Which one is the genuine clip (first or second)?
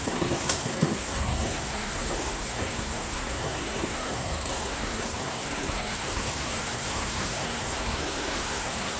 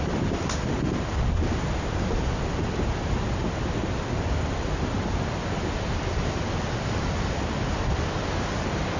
second